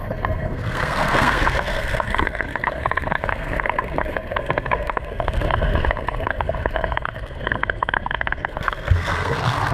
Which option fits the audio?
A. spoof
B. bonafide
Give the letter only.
A